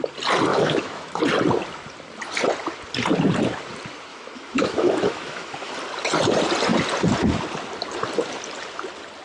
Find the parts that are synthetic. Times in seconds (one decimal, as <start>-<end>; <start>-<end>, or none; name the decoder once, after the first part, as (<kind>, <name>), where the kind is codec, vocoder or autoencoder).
0.5-1.2 (autoencoder, DAC-VAE); 4.1-5.7